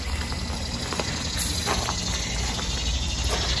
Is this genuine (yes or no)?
yes